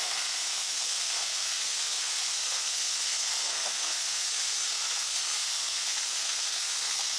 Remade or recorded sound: remade